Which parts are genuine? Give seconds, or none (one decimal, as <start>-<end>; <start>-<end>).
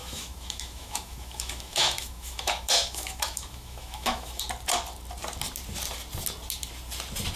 4.4-7.4